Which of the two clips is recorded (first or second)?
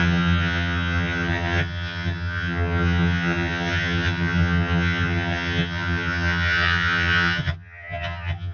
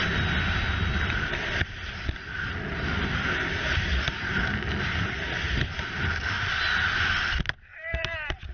second